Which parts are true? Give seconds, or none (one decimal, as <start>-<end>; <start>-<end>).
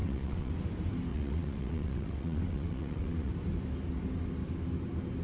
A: 0.5-1.1; 3.3-5.2